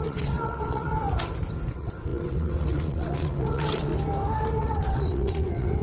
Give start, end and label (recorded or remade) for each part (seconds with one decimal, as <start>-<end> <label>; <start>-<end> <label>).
0.0-0.9 remade; 0.9-1.7 recorded; 1.7-3.9 remade; 3.9-4.6 recorded; 4.6-5.8 remade